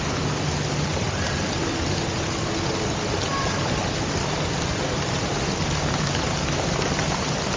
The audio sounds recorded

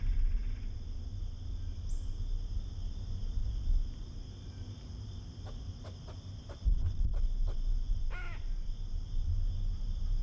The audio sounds recorded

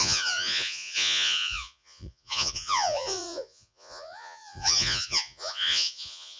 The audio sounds remade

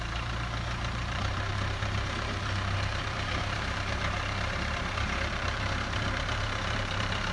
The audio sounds remade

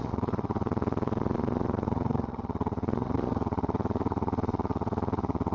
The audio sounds remade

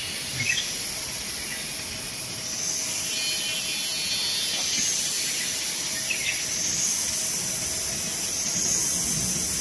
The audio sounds recorded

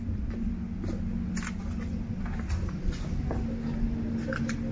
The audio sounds recorded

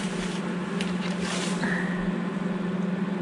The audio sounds recorded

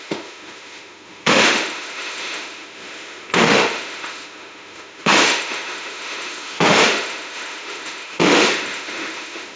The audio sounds remade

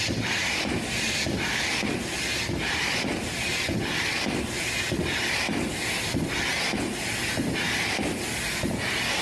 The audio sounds recorded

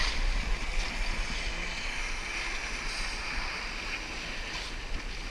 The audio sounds recorded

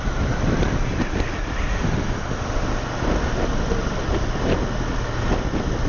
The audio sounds recorded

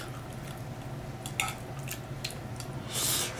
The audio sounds recorded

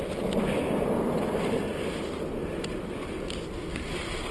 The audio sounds recorded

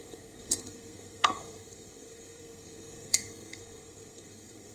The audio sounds remade